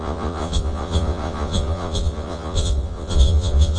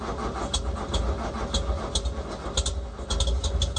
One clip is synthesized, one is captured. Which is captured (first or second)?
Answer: second